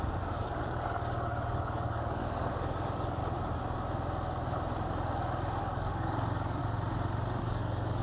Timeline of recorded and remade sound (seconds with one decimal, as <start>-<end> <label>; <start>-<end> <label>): 0.0-3.2 remade; 3.2-5.6 recorded; 5.6-6.6 remade; 6.6-7.4 recorded; 7.4-8.0 remade